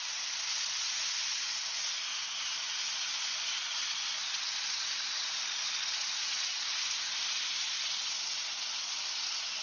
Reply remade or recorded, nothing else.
recorded